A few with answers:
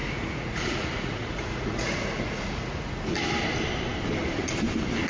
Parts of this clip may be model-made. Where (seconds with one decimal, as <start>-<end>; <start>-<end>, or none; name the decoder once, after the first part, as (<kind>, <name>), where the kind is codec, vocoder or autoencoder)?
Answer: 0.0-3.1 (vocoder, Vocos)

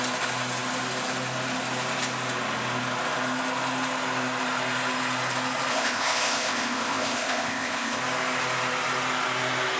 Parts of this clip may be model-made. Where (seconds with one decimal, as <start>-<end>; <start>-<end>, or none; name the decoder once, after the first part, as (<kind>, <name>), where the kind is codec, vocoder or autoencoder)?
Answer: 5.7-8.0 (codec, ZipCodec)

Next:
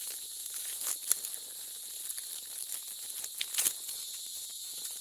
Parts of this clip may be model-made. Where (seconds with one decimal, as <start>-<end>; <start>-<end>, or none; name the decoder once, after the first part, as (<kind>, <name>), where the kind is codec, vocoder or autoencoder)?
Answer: 0.0-0.9 (autoencoder, DAC-VAE); 3.9-5.0

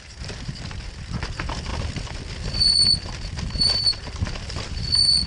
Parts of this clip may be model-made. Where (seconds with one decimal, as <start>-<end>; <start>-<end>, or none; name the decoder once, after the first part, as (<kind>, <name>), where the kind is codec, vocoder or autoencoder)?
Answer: 1.7-2.2 (vocoder, BigVGAN v2)

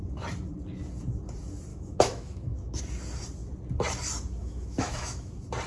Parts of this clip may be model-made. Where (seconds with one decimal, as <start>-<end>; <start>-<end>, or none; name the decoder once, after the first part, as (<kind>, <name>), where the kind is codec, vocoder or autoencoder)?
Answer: 1.7-2.8 (autoencoder, DAC-VAE); 4.4-5.3